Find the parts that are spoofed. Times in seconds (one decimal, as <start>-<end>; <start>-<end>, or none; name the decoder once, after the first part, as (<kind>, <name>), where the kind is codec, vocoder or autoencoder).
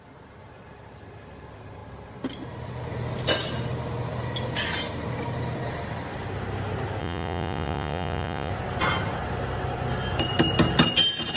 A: 7.0-8.5 (vocoder, Vocos)